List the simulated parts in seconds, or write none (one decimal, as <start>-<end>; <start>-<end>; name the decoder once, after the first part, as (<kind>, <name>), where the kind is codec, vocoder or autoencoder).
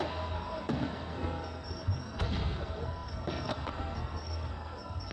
0.0-5.1 (codec, SNAC)